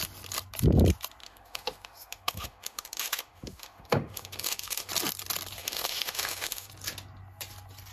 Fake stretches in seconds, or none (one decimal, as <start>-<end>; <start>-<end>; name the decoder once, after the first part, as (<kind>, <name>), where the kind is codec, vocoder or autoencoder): 1.2-4.9 (autoencoder, DAC-VAE); 5.6-6.7